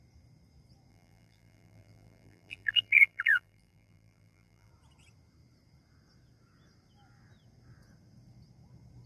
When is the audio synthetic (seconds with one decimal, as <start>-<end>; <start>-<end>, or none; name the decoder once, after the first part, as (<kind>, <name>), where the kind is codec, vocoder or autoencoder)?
0.9-4.7 (vocoder, BigVGAN v2)